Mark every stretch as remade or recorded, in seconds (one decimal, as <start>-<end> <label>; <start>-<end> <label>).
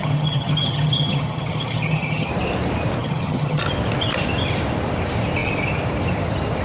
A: 0.0-2.3 remade; 2.3-3.0 recorded; 3.0-3.6 remade; 3.6-6.6 recorded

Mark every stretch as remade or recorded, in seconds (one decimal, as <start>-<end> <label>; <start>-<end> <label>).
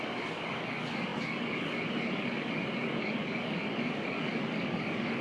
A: 0.0-5.2 remade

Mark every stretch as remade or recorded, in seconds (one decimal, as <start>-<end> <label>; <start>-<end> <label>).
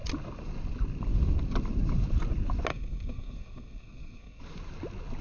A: 0.0-2.7 recorded; 2.7-4.4 remade; 4.4-5.2 recorded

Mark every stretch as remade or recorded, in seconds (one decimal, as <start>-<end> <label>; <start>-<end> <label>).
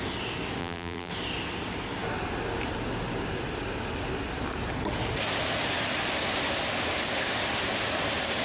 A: 0.0-0.6 recorded; 0.6-1.1 remade; 1.1-8.4 recorded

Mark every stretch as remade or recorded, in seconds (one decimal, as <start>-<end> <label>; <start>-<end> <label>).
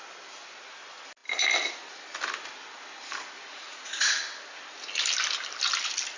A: 0.0-3.5 recorded; 3.5-4.2 remade; 4.2-6.2 recorded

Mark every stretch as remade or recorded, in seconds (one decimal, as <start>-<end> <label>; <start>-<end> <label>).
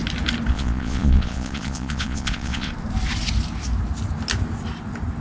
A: 0.0-0.5 recorded; 0.5-2.7 remade; 2.7-5.2 recorded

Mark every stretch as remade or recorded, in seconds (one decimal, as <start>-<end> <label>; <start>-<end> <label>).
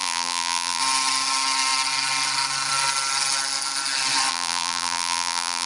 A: 0.0-0.8 remade; 0.8-4.3 recorded; 4.3-5.7 remade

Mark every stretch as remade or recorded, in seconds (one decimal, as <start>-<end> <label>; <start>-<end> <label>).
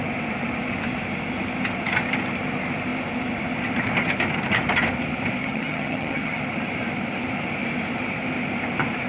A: 0.0-5.4 recorded; 5.4-6.4 remade; 6.4-9.1 recorded